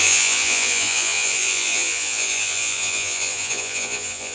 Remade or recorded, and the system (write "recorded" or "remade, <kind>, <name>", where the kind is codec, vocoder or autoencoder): remade, vocoder, Vocos